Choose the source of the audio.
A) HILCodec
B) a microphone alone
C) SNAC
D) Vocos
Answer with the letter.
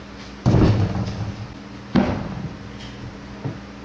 B